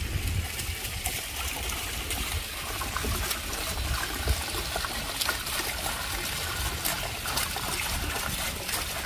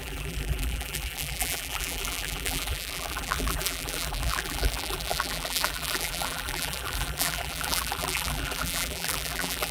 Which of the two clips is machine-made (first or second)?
second